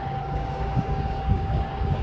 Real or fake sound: fake